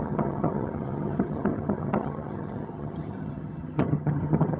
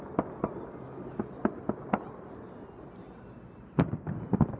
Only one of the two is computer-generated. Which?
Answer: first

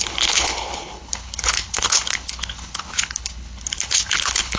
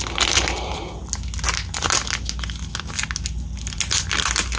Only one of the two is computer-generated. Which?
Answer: first